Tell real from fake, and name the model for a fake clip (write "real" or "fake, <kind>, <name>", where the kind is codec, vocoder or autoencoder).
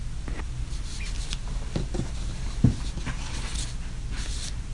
real